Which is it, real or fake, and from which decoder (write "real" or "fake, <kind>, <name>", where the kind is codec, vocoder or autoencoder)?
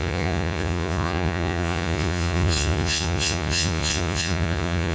fake, vocoder, Vocos